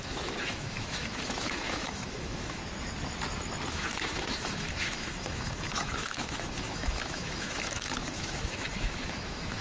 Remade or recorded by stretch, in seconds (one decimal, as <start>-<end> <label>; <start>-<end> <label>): 0.0-2.6 remade; 2.6-3.7 recorded; 3.7-9.6 remade